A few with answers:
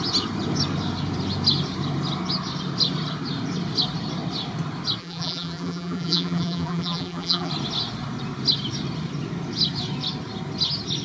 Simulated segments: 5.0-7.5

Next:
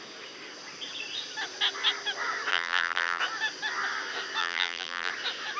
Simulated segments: 2.5-3.2; 4.4-5.1

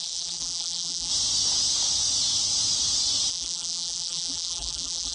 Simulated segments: 0.0-1.1; 3.3-5.1

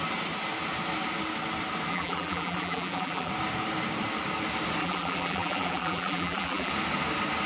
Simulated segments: 1.9-3.3; 4.8-6.7

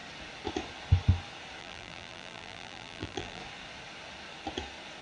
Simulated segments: 1.6-3.4